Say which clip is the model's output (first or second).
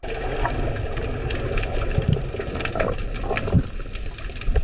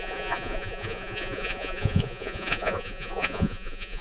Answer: second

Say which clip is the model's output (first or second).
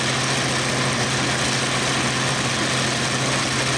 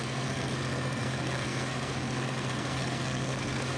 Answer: second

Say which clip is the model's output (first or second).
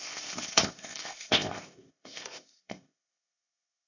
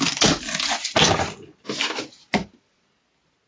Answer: first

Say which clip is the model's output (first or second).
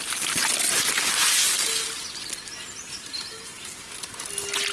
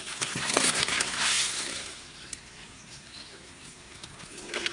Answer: second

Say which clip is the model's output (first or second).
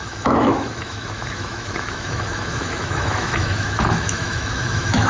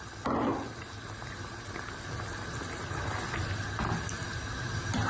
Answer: first